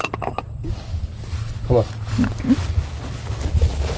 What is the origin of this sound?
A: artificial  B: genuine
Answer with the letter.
B